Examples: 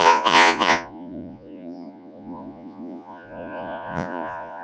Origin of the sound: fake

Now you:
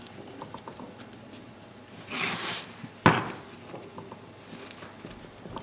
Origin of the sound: real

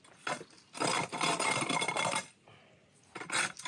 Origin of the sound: real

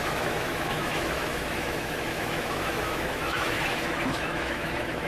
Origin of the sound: fake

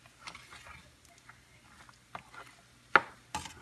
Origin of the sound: real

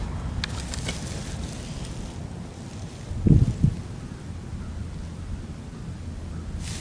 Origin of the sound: real